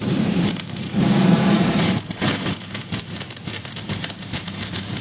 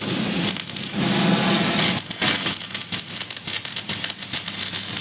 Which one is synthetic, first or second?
first